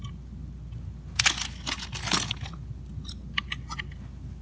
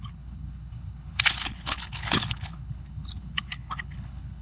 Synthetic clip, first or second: second